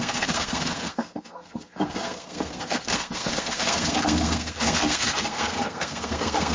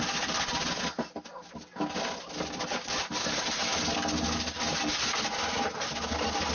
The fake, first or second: first